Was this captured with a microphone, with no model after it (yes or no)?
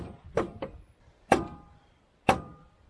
no